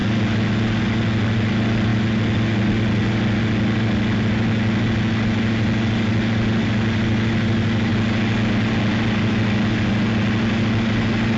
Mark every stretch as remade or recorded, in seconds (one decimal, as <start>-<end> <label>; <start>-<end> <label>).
0.0-11.4 recorded